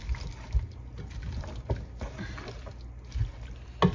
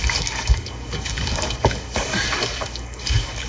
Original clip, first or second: first